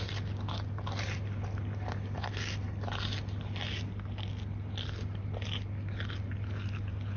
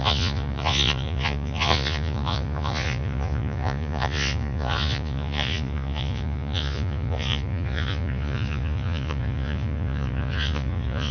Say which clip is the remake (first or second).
second